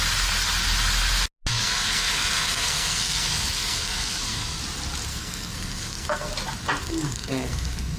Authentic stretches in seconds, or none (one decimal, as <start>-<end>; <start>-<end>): 0.0-1.5; 4.6-5.1; 6.3-6.8